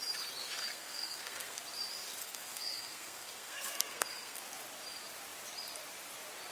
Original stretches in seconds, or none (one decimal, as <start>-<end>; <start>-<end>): 0.0-0.7; 1.6-2.2; 4.4-6.5